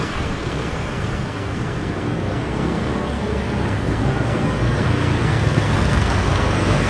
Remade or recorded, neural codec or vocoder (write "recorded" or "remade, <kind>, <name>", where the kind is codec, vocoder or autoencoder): remade, codec, SNAC